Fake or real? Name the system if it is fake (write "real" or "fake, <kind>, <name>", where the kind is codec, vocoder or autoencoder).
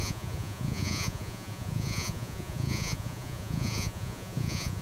fake, vocoder, Vocos